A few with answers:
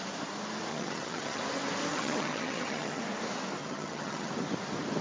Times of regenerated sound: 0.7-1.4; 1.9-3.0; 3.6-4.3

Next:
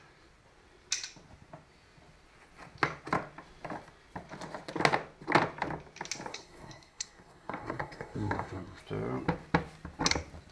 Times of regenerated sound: 6.3-8.8

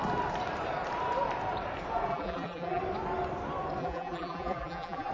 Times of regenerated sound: 2.1-2.8; 3.8-5.1